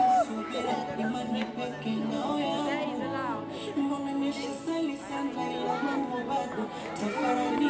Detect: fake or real real